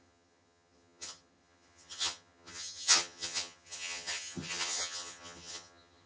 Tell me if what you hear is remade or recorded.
remade